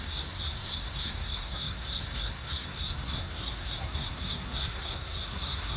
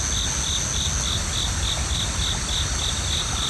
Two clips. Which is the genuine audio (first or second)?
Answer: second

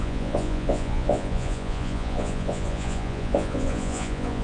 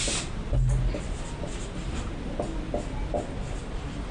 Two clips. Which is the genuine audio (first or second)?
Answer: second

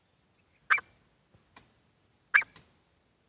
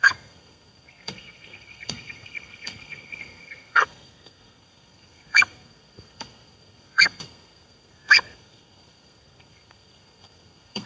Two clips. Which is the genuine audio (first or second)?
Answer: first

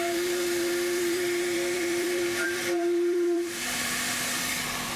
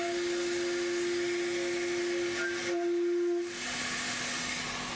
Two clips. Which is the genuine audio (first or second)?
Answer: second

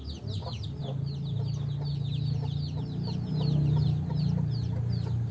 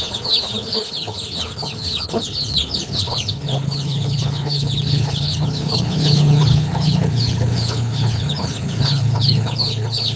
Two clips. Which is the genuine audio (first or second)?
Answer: first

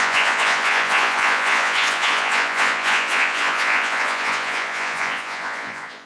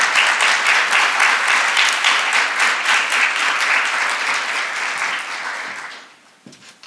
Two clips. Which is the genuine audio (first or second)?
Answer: second